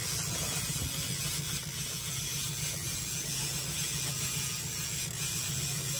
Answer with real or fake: real